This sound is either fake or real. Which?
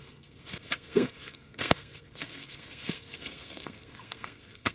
fake